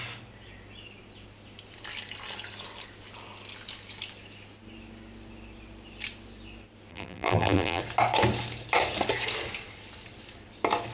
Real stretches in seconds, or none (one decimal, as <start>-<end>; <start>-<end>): 0.0-6.9; 7.8-10.9